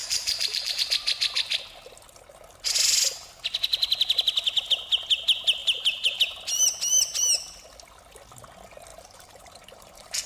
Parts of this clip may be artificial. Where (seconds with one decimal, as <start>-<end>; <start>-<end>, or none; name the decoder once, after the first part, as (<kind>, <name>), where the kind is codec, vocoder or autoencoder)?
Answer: 0.0-0.8 (vocoder, BigVGAN v2); 5.6-6.2; 8.9-10.3